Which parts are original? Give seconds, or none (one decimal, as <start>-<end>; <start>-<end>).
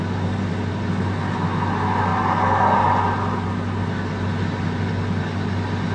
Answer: 0.0-5.9